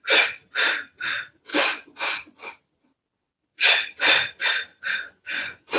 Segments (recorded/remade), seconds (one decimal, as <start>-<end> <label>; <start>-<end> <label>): 0.0-1.5 recorded; 1.5-2.5 remade; 2.5-4.7 recorded; 4.7-5.8 remade

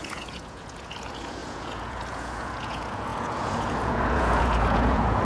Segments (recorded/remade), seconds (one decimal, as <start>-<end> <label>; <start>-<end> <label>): 0.0-5.2 remade

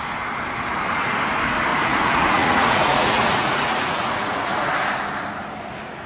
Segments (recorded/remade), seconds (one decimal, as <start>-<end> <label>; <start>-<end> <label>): 0.0-1.7 recorded; 1.7-4.7 remade; 4.7-6.1 recorded

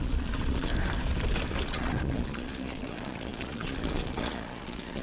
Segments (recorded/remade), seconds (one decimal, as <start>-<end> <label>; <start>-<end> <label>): 0.0-0.7 remade; 0.7-1.6 recorded; 1.6-5.0 remade

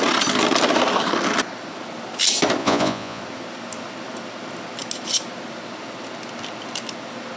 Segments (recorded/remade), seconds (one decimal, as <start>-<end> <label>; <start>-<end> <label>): 0.0-2.6 recorded; 2.6-3.2 remade; 3.2-7.4 recorded

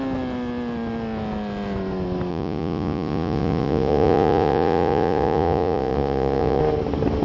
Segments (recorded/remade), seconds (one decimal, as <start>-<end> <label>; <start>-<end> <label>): 0.0-2.3 recorded; 2.3-6.6 remade; 6.6-7.2 recorded

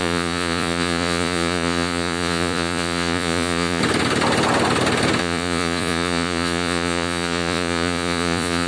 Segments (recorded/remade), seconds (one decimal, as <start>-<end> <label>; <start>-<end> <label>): 0.0-3.8 remade; 3.8-5.2 recorded; 5.2-8.7 remade